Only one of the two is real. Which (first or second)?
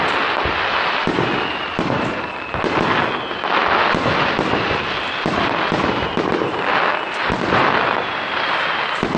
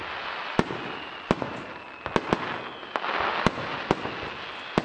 second